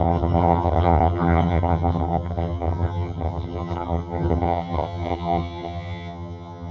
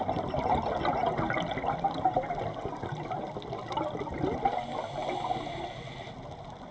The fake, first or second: first